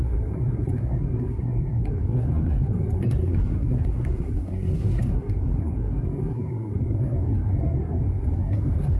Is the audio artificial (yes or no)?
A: yes